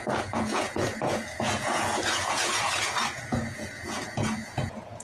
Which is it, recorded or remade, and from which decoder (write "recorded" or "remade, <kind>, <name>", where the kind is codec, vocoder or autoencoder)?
remade, vocoder, Vocos